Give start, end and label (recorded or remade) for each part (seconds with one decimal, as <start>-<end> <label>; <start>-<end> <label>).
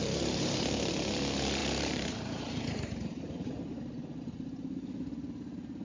0.0-0.9 remade; 0.9-1.6 recorded; 1.6-3.8 remade; 3.8-5.8 recorded